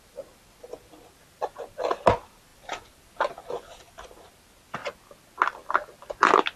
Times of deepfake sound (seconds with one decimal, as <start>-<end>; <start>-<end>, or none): 2.5-4.3